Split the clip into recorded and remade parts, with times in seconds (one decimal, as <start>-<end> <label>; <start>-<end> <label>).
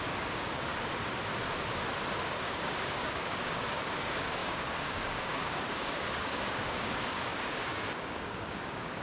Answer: 0.0-0.7 remade; 0.7-2.2 recorded; 2.2-9.0 remade